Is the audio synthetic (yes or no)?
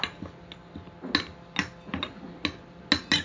no